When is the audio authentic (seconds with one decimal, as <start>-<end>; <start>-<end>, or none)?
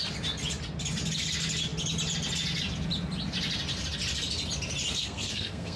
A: 0.0-5.0